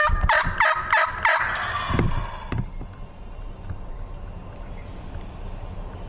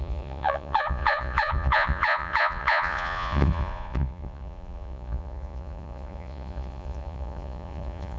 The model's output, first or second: second